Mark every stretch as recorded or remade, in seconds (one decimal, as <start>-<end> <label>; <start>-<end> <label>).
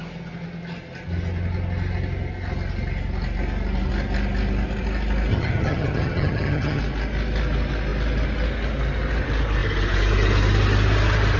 0.0-5.3 recorded; 5.3-6.8 remade; 6.8-11.4 recorded